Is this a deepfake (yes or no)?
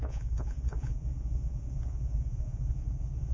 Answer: yes